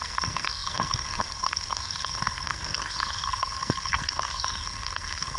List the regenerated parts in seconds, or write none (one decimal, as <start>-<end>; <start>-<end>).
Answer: 0.0-5.4